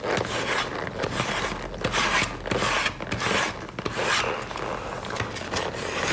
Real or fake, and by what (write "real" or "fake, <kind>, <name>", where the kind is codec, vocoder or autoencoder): real